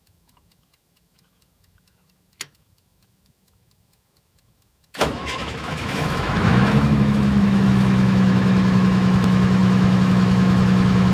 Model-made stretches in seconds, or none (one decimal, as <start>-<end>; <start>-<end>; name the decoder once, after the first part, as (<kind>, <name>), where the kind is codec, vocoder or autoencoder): 0.0-11.1 (autoencoder, DAC-VAE)